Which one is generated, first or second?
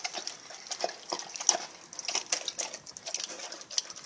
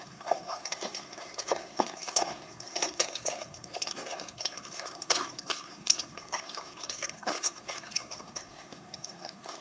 second